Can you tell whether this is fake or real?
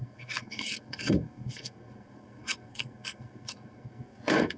fake